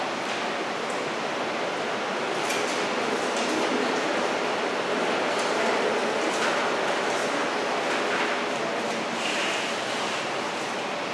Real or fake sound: real